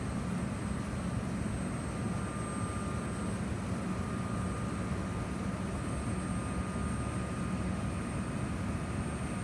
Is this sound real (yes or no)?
yes